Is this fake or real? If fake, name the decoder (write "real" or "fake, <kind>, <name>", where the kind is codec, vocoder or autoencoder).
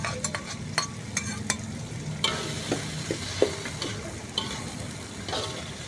fake, vocoder, BigVGAN v2